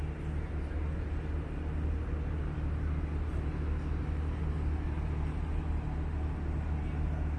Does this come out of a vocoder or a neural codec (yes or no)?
no